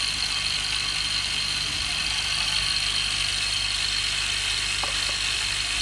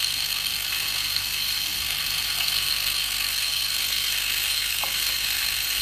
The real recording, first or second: first